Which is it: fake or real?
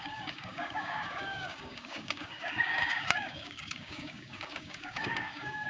fake